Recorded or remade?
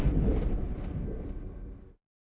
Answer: recorded